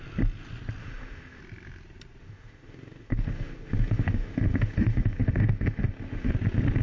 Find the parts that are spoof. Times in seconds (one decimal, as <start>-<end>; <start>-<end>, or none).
0.8-1.4; 2.2-6.3